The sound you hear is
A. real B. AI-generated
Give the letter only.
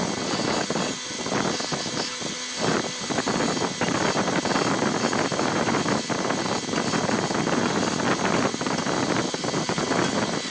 A